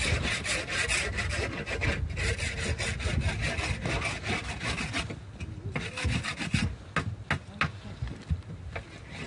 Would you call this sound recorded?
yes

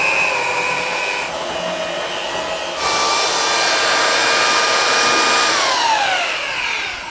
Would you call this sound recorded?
yes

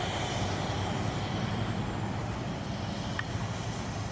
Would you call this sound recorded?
yes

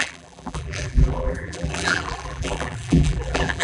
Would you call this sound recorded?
no